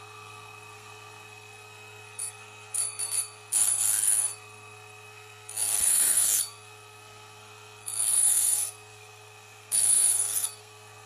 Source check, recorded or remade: remade